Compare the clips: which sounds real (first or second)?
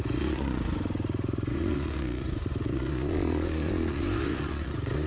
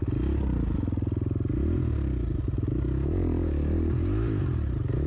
second